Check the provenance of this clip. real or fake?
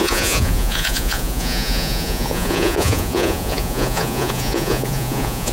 fake